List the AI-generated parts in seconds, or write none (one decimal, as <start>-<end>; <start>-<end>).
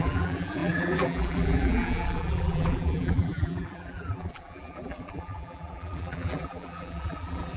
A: 0.0-7.6